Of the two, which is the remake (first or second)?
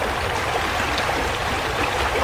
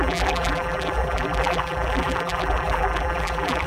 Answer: second